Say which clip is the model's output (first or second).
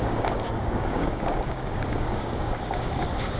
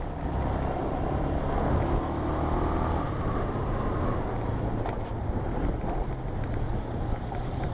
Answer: first